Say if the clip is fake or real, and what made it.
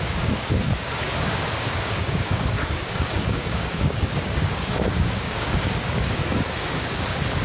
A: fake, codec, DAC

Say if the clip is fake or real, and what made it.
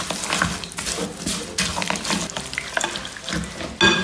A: real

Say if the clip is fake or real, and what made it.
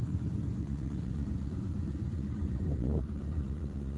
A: fake, vocoder, Vocos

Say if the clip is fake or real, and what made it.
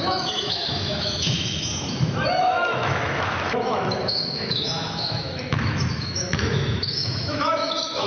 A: fake, autoencoder, DAC-VAE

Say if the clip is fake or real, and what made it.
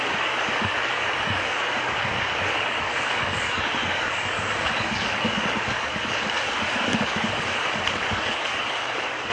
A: fake, codec, DAC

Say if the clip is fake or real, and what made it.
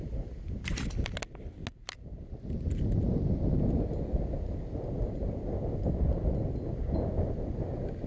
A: real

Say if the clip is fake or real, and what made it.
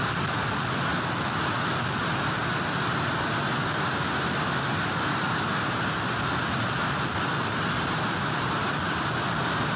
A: real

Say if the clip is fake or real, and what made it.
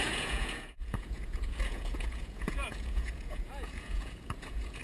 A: fake, vocoder, Vocos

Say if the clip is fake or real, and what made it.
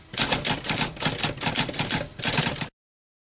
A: real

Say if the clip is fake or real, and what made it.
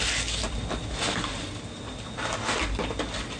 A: real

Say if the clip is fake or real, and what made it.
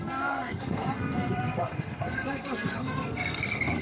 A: fake, codec, SNAC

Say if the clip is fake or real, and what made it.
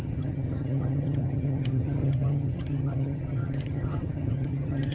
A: fake, vocoder, HiFi-GAN